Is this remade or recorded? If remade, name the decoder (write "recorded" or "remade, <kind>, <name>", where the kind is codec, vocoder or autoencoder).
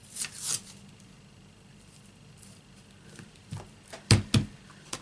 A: recorded